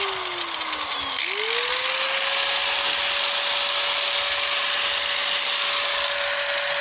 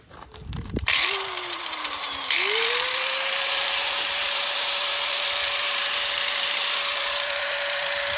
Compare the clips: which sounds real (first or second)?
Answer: first